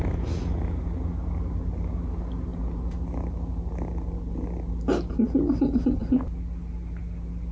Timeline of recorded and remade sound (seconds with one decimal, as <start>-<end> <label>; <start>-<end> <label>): 0.0-7.5 recorded